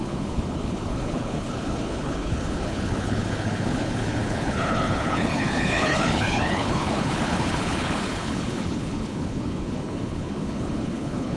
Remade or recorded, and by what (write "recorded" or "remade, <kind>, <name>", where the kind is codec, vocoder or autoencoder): remade, codec, HILCodec